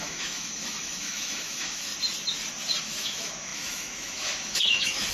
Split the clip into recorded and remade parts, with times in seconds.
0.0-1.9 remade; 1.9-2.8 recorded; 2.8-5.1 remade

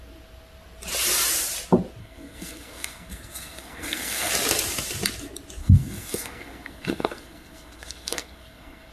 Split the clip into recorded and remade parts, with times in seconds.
0.0-2.0 recorded; 2.0-4.3 remade; 4.3-5.6 recorded; 5.6-8.9 remade

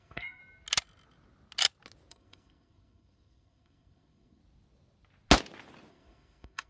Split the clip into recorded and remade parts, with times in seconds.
0.0-0.4 remade; 0.4-2.1 recorded; 2.1-4.4 remade; 4.4-5.9 recorded; 5.9-6.7 remade

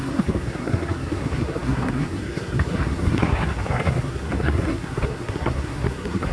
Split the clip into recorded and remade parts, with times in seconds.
0.0-6.3 remade

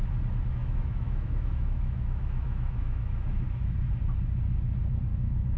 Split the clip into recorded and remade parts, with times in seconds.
0.0-0.6 recorded; 0.6-3.9 remade; 3.9-5.1 recorded; 5.1-5.6 remade

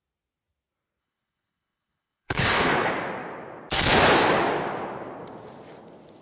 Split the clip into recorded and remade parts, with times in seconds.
0.0-1.0 recorded; 1.0-2.9 remade; 2.9-6.2 recorded

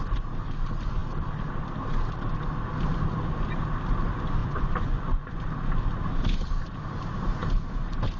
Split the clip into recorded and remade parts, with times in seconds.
0.0-4.4 recorded; 4.4-5.4 remade; 5.4-8.2 recorded

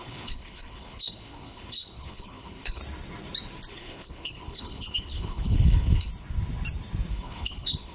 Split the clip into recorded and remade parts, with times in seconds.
0.0-2.8 remade; 2.8-3.7 recorded; 3.7-6.1 remade; 6.1-7.1 recorded; 7.1-7.9 remade